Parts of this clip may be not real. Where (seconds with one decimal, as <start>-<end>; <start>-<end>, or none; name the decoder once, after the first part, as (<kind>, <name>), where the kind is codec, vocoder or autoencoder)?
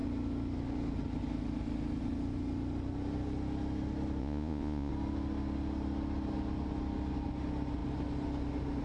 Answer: 4.2-4.9 (vocoder, Vocos)